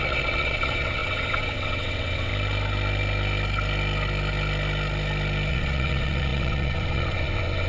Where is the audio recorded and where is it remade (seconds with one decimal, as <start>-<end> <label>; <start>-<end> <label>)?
0.0-2.3 remade; 2.3-5.5 recorded; 5.5-7.7 remade